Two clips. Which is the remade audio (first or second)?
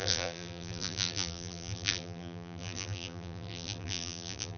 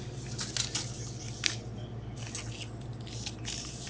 first